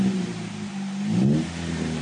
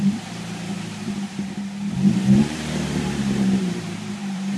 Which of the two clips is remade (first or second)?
second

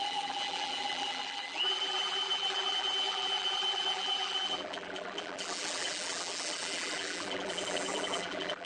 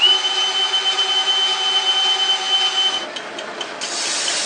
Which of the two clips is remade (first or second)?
first